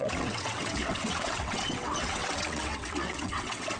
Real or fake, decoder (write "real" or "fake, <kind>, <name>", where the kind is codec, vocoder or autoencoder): fake, vocoder, WaveNeXt